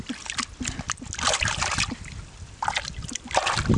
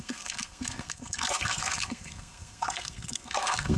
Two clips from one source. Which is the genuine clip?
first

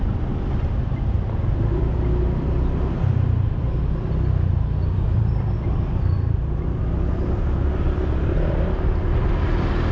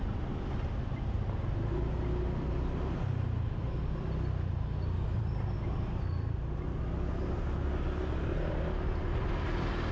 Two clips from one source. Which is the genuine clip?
second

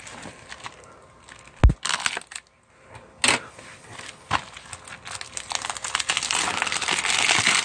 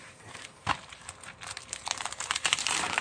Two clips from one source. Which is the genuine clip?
first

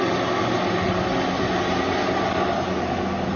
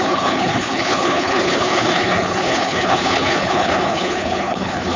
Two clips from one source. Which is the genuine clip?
first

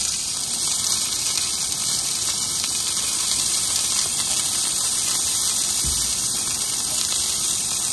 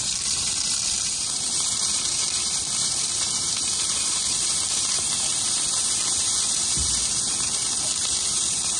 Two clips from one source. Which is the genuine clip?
first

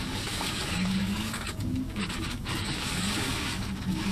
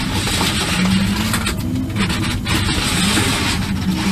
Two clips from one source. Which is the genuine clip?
second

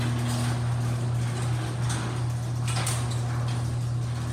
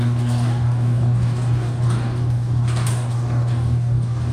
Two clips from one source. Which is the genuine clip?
first